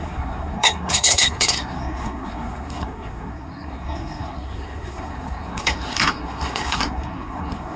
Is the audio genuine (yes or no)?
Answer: no